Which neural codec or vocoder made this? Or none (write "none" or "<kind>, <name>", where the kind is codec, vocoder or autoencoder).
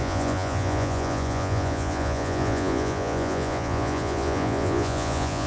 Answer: vocoder, Vocos